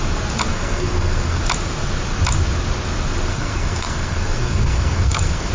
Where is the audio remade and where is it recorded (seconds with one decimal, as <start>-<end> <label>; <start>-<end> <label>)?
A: 0.0-0.5 recorded; 0.5-1.4 remade; 1.4-3.3 recorded; 3.3-5.5 remade